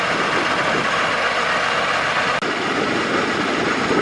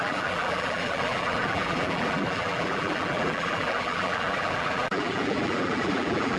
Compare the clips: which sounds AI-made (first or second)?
second